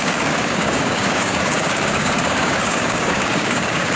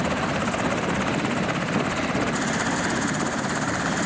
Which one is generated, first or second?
first